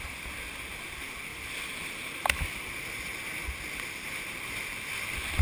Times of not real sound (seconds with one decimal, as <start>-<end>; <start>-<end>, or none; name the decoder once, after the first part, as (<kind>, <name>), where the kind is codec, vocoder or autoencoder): none